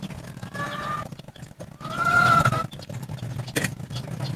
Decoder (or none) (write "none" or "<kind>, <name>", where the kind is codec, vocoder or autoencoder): none